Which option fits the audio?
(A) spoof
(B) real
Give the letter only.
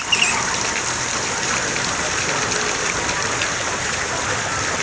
A